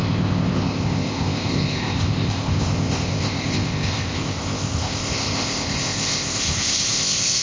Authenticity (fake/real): fake